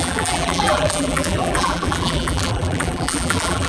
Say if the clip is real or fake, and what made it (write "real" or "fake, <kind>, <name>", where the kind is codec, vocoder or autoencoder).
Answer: fake, vocoder, BigVGAN v2